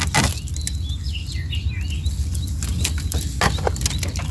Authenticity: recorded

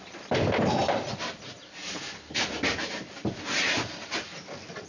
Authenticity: recorded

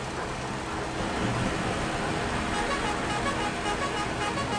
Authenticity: recorded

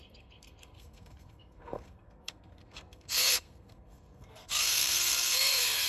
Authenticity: remade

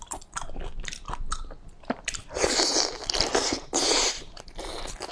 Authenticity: remade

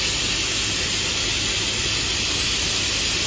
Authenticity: recorded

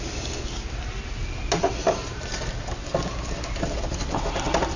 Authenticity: recorded